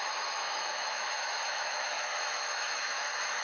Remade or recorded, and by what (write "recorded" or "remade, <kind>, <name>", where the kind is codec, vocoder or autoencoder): remade, autoencoder, DAC-VAE